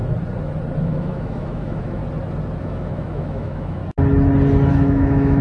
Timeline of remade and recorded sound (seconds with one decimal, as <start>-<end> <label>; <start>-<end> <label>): 0.0-0.8 recorded; 0.8-2.0 remade; 2.0-2.6 recorded; 2.6-3.8 remade; 3.8-4.7 recorded; 4.7-5.4 remade